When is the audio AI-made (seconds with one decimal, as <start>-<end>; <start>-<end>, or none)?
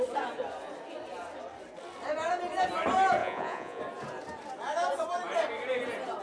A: 3.2-3.8